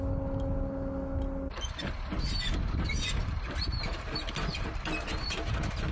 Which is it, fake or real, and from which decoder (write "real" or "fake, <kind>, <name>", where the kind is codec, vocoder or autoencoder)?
real